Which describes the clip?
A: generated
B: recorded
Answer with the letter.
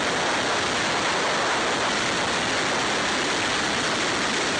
B